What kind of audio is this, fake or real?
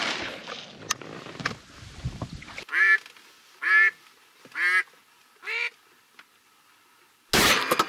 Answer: real